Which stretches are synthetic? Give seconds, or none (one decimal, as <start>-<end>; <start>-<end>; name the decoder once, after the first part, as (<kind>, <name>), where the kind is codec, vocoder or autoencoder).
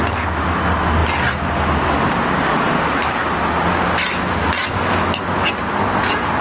none